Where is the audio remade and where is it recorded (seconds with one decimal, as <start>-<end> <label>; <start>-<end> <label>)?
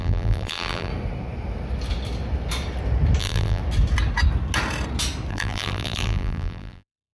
0.0-0.9 remade; 0.9-3.2 recorded; 3.2-3.6 remade; 3.6-5.3 recorded; 5.3-7.1 remade